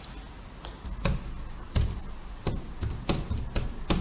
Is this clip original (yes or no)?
yes